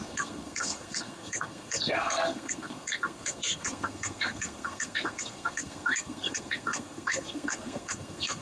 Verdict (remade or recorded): remade